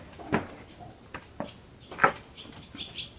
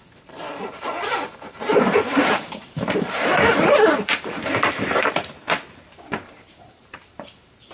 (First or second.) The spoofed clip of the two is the second